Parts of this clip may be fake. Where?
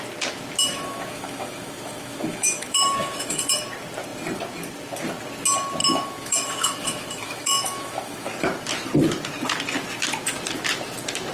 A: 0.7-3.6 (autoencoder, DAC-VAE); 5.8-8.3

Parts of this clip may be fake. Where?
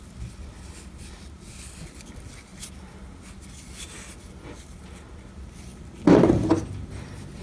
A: none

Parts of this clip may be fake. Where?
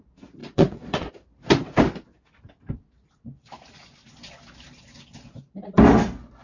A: 0.4-1.1 (vocoder, Vocos)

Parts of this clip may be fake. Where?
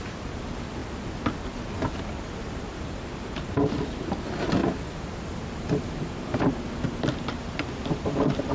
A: none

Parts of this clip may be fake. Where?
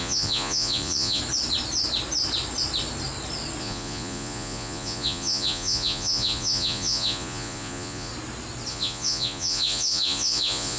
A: 0.0-1.2 (vocoder, Vocos); 3.6-8.1; 8.7-10.8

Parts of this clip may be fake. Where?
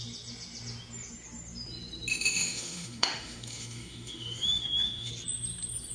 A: 2.1-5.1 (autoencoder, DAC-VAE)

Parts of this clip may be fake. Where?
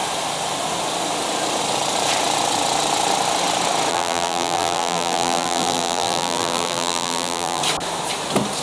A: 3.9-7.6 (vocoder, BigVGAN v2)